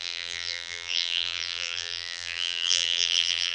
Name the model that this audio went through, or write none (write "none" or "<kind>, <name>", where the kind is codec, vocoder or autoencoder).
vocoder, BigVGAN v2